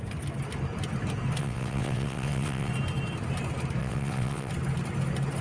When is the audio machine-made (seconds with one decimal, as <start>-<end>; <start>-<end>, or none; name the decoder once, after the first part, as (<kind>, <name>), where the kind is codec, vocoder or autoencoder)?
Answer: 1.4-2.7 (vocoder, WaveNeXt); 3.8-4.5